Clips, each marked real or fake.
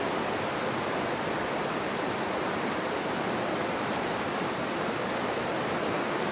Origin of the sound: real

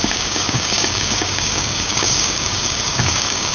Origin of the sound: fake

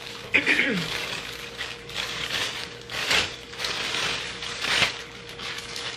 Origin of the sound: fake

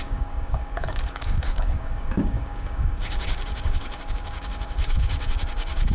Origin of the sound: fake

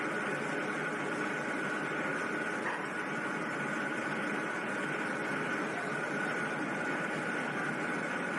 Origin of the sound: real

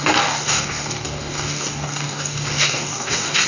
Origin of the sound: fake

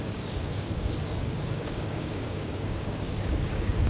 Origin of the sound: fake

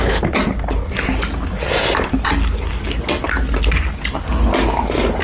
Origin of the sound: real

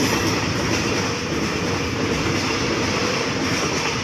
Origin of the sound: real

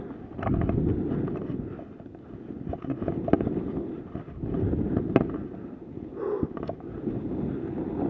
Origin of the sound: real